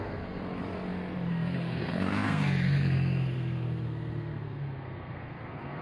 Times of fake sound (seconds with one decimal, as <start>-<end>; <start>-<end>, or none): 0.0-0.4; 1.3-5.8